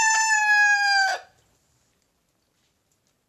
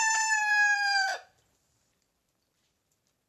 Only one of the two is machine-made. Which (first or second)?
second